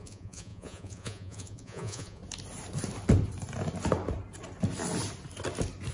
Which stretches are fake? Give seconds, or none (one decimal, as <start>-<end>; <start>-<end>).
0.0-2.2